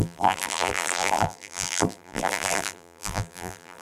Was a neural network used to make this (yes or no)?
yes